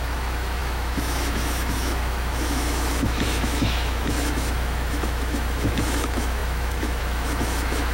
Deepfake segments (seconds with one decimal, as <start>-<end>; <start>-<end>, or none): 0.0-7.9